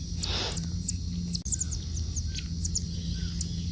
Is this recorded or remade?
recorded